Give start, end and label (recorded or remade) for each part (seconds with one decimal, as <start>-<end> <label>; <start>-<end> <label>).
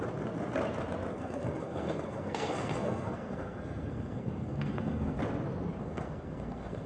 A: 0.0-1.1 recorded; 1.1-5.2 remade; 5.2-5.8 recorded; 5.8-6.9 remade